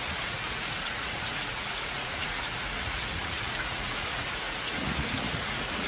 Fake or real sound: fake